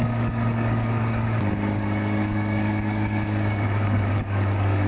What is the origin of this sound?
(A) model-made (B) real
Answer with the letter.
A